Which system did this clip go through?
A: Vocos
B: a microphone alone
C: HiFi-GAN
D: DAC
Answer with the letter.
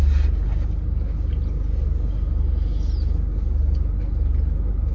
B